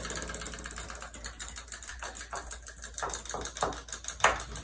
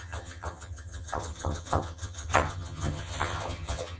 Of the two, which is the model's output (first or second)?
second